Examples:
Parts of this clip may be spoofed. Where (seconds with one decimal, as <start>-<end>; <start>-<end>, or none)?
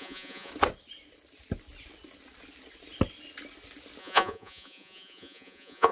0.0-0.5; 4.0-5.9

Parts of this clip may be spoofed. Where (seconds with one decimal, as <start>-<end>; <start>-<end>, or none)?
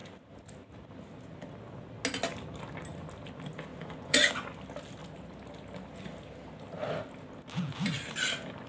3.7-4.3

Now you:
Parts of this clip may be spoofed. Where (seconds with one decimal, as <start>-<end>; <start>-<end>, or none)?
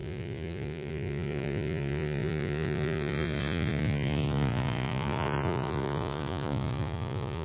0.0-7.4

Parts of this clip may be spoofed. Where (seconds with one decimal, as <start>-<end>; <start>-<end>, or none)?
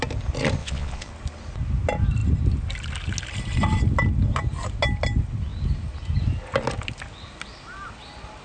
0.6-1.1